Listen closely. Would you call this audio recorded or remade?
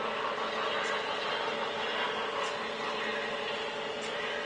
recorded